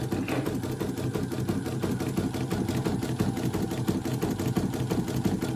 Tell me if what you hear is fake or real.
real